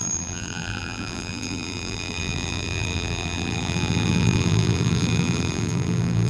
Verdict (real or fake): fake